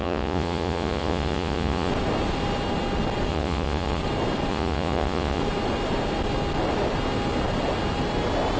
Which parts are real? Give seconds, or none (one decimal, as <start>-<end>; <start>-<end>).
1.9-3.3; 4.0-4.5; 5.4-8.6